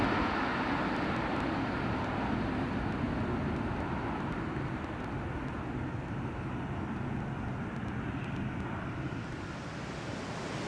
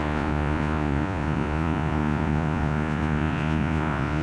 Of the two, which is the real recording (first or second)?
first